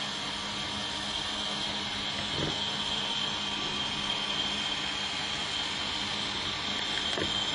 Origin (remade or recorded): recorded